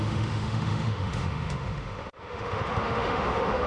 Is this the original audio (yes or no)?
no